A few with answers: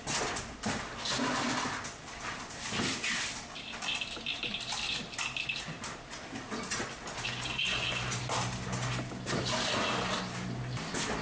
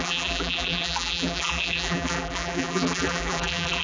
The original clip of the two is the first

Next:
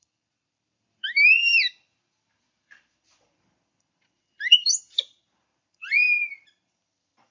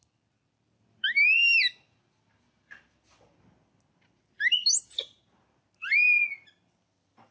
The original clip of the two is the second